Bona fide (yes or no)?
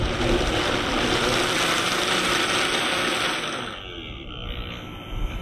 yes